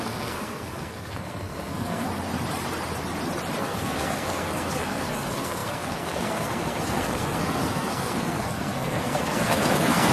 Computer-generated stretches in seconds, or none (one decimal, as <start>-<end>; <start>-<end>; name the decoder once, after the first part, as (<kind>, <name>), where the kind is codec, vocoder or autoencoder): 0.0-2.1 (codec, SNAC); 3.6-10.1